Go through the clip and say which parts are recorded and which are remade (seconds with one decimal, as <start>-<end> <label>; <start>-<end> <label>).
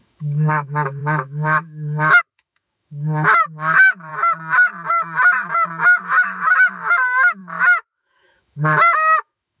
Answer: 0.0-4.1 remade; 4.1-6.0 recorded; 6.0-9.6 remade